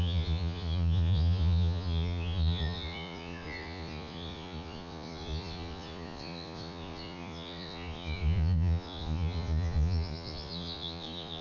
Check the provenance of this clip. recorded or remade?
remade